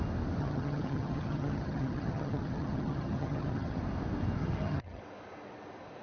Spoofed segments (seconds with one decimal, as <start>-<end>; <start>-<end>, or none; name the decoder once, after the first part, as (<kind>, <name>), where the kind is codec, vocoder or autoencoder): 0.4-3.8 (vocoder, HiFi-GAN); 4.4-5.0